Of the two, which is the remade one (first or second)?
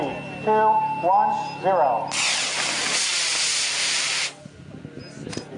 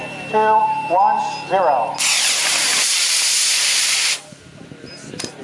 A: second